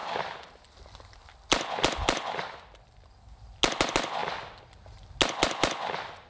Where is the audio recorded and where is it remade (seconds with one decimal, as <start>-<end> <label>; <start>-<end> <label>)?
0.0-6.3 recorded